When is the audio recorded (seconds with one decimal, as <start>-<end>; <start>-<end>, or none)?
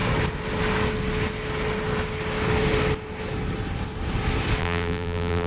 0.0-4.6